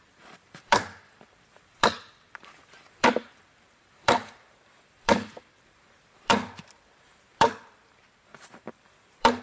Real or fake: fake